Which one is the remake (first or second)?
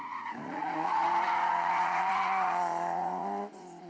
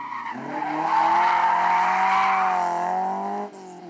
first